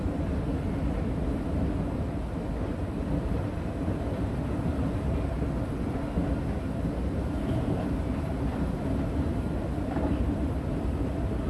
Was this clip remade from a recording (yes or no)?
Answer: no